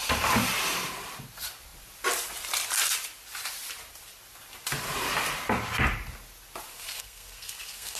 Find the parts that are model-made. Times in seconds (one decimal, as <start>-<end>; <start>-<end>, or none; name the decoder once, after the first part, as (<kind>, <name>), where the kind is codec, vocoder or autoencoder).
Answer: 6.7-8.0 (codec, SNAC)